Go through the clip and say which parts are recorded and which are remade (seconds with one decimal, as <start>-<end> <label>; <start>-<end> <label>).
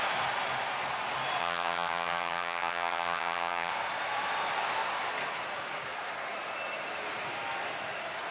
0.0-1.4 recorded; 1.4-3.7 remade; 3.7-8.3 recorded